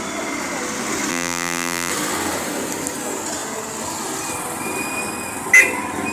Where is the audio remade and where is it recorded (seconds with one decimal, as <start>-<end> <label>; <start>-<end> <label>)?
0.0-1.1 recorded; 1.1-1.9 remade; 1.9-6.1 recorded